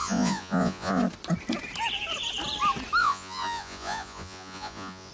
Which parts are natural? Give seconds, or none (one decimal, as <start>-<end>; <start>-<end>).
1.0-3.0